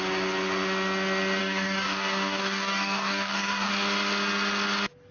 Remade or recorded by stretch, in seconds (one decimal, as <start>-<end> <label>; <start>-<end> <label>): 0.0-1.4 recorded; 1.4-3.7 remade; 3.7-5.1 recorded